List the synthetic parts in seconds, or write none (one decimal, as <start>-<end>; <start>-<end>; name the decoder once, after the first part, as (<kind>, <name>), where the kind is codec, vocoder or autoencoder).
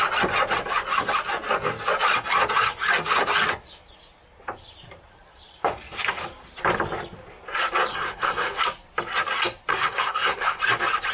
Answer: 7.9-8.6 (codec, SNAC); 9.7-10.6